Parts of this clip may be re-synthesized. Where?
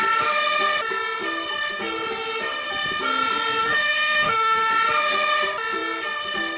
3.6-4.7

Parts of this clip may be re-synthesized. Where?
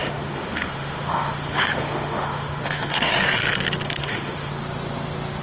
0.0-3.1; 4.0-4.5